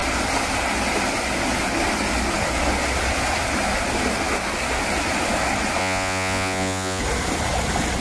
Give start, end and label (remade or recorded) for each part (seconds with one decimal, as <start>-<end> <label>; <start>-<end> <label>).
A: 0.0-5.8 recorded; 5.8-7.0 remade; 7.0-8.0 recorded